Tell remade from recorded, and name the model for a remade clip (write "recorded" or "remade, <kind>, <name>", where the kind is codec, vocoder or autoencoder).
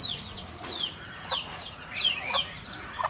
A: remade, vocoder, Vocos